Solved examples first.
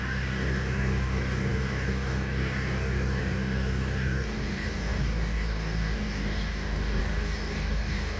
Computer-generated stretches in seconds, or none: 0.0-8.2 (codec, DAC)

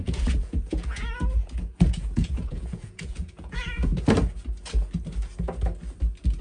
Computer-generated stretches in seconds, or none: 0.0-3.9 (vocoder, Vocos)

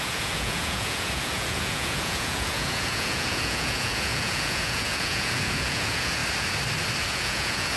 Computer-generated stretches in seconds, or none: 0.0-6.2 (vocoder, Vocos); 7.0-7.8

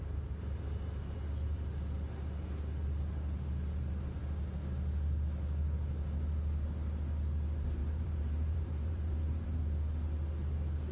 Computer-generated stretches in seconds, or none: 7.8-9.6 (vocoder, BigVGAN v2)